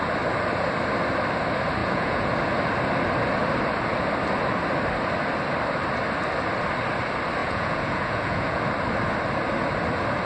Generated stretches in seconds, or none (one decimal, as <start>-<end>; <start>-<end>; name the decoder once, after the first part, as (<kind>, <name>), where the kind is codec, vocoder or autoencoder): 1.8-2.3 (vocoder, Vocos); 7.4-8.6